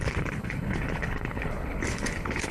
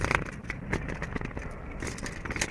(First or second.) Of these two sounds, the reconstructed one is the first